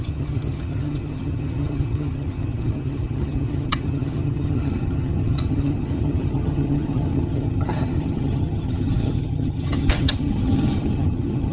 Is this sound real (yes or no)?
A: no